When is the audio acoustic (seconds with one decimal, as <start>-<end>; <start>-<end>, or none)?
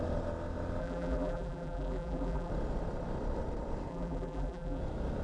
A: 0.0-0.8; 2.5-3.9; 4.8-5.2